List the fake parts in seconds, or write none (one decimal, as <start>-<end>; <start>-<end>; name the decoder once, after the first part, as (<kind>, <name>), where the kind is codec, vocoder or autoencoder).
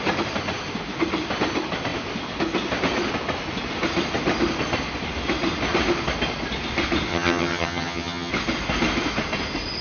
7.1-8.3 (vocoder, HiFi-GAN)